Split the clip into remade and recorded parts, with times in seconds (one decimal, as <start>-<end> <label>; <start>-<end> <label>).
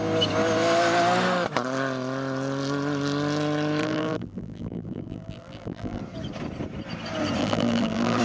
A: 0.0-3.8 recorded; 3.8-6.0 remade; 6.0-7.4 recorded; 7.4-8.2 remade